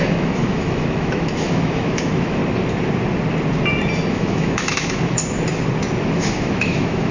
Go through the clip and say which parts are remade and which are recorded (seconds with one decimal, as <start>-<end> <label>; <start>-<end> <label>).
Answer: 0.0-2.4 remade; 2.4-4.1 recorded; 4.1-5.2 remade; 5.2-6.0 recorded; 6.0-7.1 remade